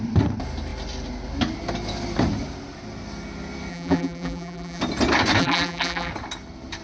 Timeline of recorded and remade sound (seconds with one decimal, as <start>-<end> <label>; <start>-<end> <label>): 0.0-3.7 recorded; 3.7-4.8 remade; 4.8-5.4 recorded; 5.4-6.1 remade; 6.1-6.8 recorded